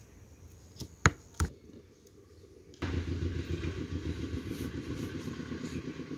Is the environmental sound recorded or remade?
recorded